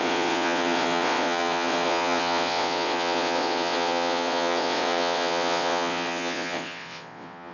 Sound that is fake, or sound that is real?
fake